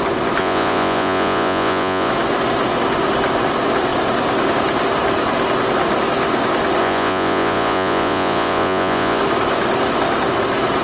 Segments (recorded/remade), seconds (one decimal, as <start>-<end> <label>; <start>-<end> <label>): 0.0-0.4 recorded; 0.4-2.1 remade; 2.1-6.8 recorded; 6.8-9.2 remade; 9.2-10.8 recorded